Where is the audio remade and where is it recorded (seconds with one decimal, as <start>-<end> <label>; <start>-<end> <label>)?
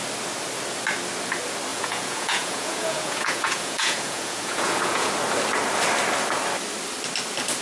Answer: 0.0-1.7 recorded; 1.7-5.1 remade; 5.1-7.6 recorded